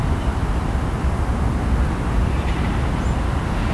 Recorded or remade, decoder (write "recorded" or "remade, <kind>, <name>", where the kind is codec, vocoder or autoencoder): recorded